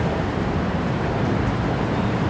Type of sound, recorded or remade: remade